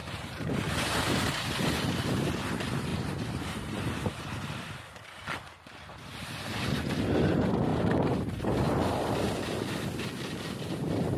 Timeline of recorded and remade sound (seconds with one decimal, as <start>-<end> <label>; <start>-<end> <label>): 0.0-2.3 remade; 2.3-11.2 recorded